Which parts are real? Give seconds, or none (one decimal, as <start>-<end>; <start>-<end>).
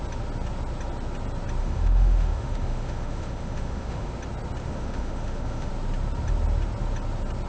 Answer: 0.0-1.6; 4.1-4.6; 5.7-7.5